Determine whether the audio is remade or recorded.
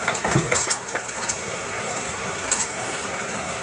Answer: remade